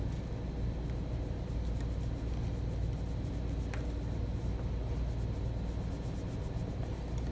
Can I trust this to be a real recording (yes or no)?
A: yes